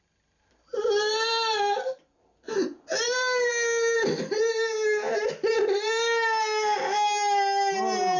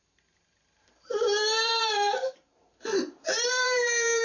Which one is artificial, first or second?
second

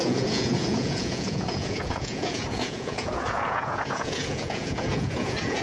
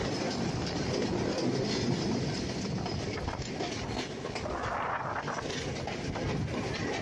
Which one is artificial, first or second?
first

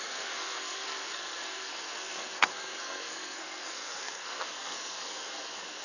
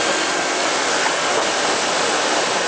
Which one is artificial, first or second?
first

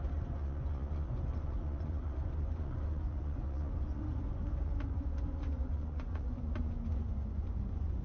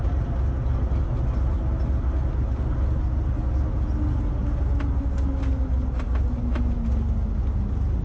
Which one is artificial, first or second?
first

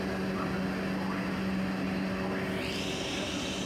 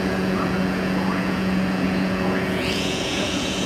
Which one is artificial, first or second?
second